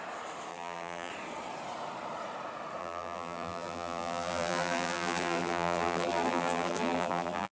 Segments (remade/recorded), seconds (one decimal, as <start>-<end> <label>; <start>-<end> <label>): 0.0-0.5 recorded; 0.5-1.1 remade; 1.1-2.8 recorded; 2.8-7.5 remade